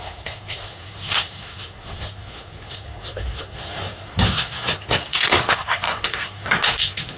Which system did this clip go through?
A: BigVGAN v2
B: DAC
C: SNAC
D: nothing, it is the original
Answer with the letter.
C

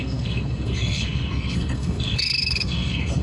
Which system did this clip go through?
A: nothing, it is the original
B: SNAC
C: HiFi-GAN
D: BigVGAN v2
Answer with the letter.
B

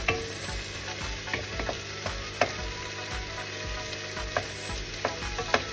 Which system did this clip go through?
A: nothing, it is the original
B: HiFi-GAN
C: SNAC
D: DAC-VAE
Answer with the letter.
A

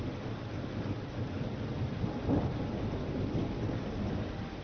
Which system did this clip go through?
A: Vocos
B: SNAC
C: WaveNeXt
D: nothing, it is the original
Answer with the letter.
D